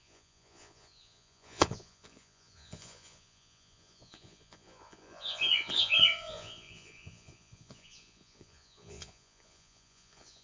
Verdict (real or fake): fake